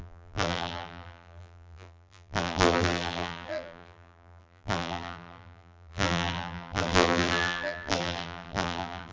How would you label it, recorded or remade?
remade